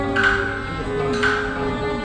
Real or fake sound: real